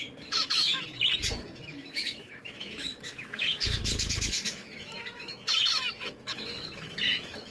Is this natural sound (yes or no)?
no